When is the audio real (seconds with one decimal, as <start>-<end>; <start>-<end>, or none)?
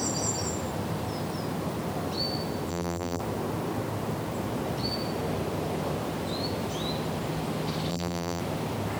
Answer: 0.0-2.7; 3.2-7.9; 8.4-9.0